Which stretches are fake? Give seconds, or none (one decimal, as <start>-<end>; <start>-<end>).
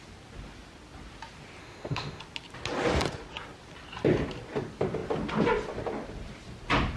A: 1.6-2.2